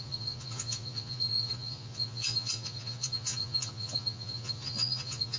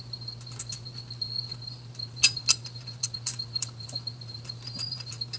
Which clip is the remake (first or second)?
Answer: first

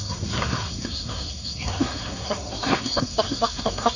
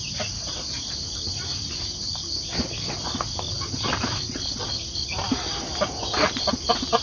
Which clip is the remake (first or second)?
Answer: first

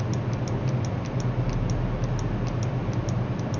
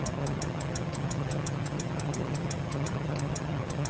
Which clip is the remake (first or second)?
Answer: second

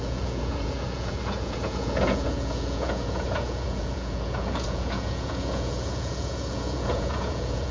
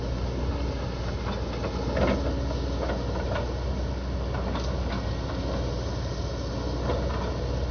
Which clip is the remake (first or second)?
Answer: first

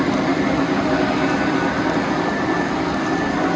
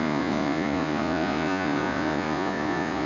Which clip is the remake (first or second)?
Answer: second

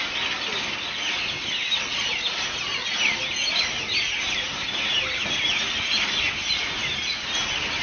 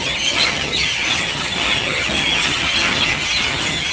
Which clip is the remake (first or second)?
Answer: second